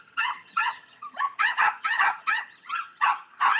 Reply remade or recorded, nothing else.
remade